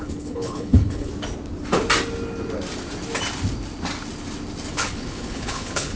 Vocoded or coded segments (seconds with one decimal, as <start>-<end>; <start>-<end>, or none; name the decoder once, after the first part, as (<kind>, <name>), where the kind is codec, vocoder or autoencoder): 0.0-1.1 (codec, HILCodec); 4.7-6.0